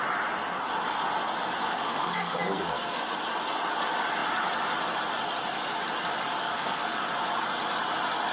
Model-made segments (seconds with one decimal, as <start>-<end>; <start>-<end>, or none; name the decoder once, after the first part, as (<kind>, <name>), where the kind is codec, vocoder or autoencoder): 1.7-3.0 (codec, SNAC); 6.4-7.0